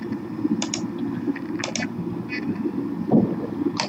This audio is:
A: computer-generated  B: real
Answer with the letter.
B